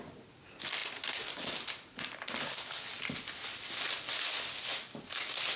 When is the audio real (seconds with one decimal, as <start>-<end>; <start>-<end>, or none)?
0.0-5.6